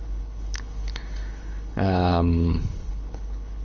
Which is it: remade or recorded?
remade